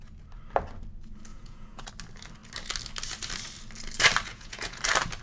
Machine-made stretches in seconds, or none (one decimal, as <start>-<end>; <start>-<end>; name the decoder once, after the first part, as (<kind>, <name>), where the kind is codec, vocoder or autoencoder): 1.3-1.9 (vocoder, Vocos); 4.3-4.8